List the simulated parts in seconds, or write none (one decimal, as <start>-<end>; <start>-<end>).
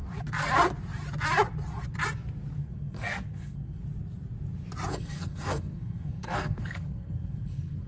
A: 2.6-3.8; 4.9-7.9